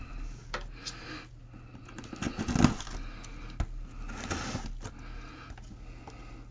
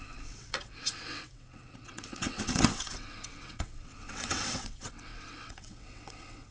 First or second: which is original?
first